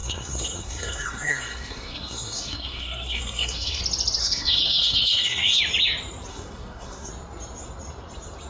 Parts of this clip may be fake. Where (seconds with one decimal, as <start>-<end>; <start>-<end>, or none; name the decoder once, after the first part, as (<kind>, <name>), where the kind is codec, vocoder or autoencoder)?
0.0-3.8 (codec, SNAC); 4.2-5.6; 6.3-7.1